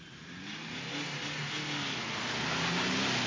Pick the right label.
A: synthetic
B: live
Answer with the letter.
B